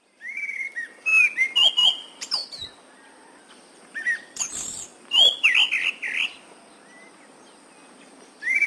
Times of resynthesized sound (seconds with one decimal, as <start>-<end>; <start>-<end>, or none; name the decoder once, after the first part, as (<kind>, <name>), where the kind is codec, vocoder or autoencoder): 0.0-1.1 (vocoder, BigVGAN v2); 1.7-2.4; 3.5-4.9; 8.2-8.7